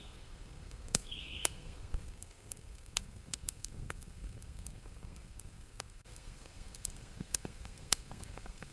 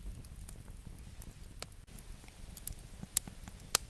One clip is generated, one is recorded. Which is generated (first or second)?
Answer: first